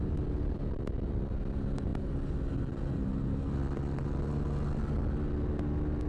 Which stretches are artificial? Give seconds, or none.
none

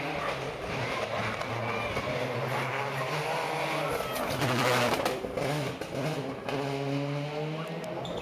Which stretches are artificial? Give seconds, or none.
none

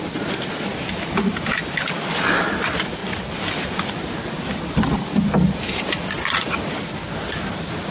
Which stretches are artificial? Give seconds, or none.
none

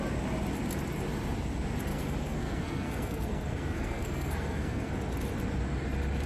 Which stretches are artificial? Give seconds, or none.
1.9-4.9 (codec, SNAC)

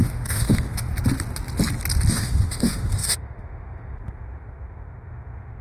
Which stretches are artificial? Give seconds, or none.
0.0-0.9 (autoencoder, DAC-VAE); 2.1-5.6